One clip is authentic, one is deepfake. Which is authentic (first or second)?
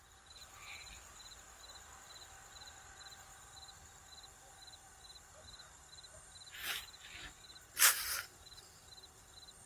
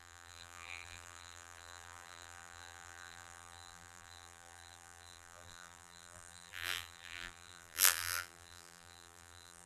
first